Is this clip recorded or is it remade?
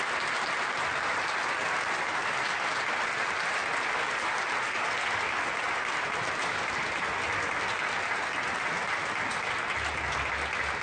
recorded